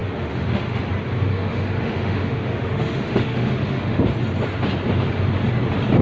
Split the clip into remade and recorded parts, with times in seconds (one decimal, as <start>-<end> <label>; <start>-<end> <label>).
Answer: 0.0-0.8 remade; 0.8-1.3 recorded; 1.3-4.0 remade; 4.0-6.0 recorded